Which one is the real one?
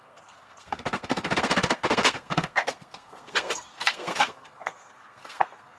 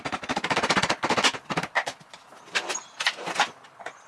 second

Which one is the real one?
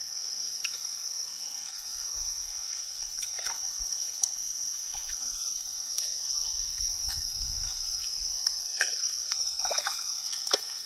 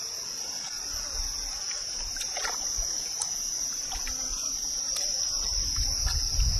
second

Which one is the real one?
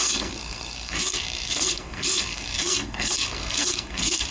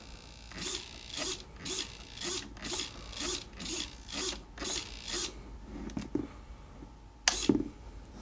second